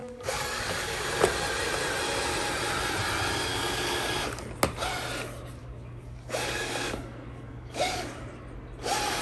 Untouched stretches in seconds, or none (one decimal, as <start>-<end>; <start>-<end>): 1.0-3.5; 4.1-5.6; 8.3-9.2